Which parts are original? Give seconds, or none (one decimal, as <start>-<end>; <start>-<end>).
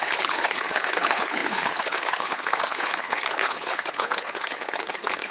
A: none